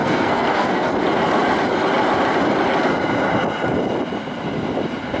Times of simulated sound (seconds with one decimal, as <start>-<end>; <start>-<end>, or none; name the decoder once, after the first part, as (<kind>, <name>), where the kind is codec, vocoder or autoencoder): 0.0-0.9 (codec, SNAC)